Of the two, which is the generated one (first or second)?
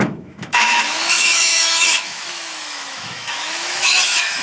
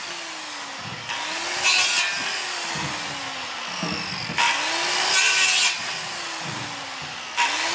first